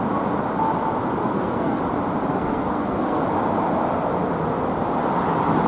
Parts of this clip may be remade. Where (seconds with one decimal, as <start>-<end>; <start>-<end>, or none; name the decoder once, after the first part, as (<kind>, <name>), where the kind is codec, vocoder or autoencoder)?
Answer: 1.2-1.8 (codec, SNAC); 2.3-3.2